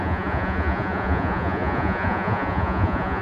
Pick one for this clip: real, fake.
fake